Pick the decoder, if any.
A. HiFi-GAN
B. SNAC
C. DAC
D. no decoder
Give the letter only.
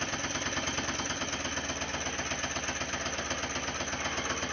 D